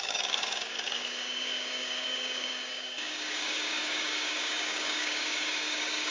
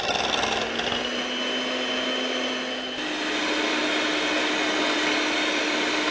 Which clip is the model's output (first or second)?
first